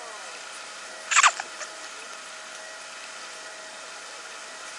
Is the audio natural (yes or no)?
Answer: yes